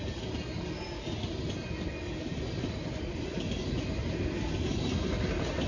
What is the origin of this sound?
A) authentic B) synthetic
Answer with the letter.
A